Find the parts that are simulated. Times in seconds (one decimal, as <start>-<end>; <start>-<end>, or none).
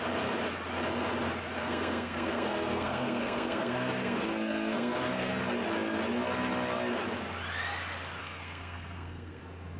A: 1.6-5.3; 8.2-9.4